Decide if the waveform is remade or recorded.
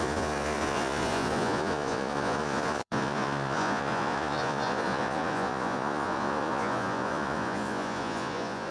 remade